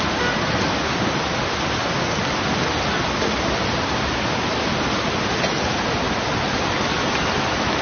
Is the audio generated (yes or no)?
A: no